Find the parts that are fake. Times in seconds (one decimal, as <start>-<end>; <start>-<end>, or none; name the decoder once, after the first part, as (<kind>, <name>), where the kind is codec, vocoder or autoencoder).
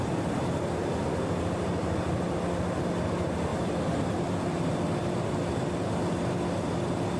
none